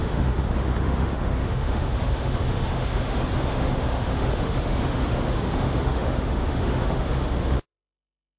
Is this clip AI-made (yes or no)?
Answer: yes